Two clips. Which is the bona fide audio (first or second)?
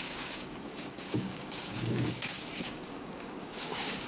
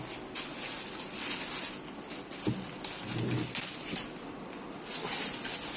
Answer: second